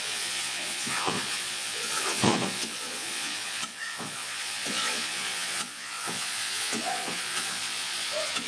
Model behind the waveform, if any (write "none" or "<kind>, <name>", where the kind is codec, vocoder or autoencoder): vocoder, Vocos